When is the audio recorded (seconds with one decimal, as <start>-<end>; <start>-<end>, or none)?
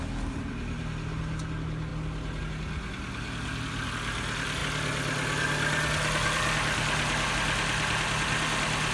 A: 0.0-8.9